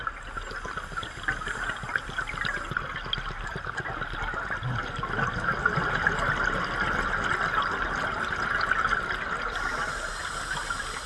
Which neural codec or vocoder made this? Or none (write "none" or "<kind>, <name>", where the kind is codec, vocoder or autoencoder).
none